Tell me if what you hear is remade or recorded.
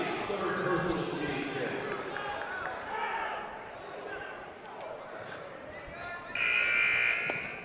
recorded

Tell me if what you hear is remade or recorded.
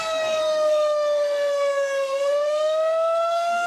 remade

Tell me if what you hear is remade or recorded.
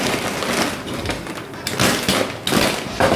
recorded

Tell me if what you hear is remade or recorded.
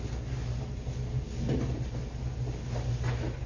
recorded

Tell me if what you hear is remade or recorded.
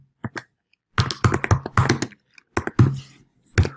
recorded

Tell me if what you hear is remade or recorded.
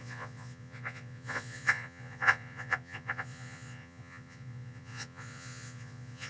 remade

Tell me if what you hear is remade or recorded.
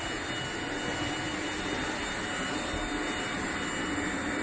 recorded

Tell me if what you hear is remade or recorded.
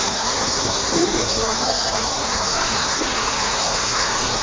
remade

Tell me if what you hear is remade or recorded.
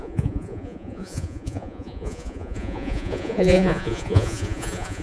remade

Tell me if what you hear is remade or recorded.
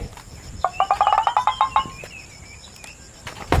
recorded